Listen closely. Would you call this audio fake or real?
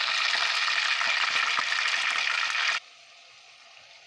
real